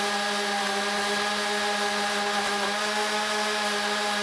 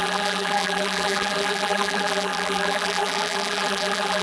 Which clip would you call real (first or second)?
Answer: first